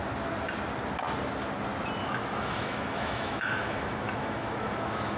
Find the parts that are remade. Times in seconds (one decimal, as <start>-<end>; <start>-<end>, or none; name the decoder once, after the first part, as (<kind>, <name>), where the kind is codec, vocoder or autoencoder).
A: 2.0-5.2 (autoencoder, DAC-VAE)